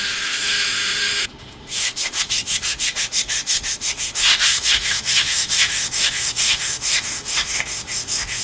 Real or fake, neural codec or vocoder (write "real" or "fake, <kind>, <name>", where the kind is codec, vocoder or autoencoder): fake, autoencoder, DAC-VAE